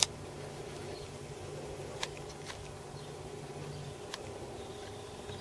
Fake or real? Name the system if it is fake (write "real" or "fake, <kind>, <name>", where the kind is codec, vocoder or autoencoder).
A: real